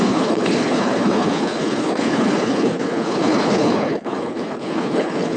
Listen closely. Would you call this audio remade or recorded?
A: remade